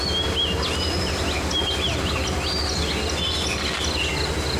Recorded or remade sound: recorded